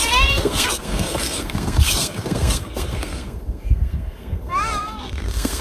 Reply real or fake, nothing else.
fake